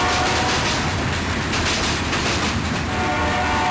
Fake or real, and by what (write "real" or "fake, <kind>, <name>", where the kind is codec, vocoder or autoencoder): real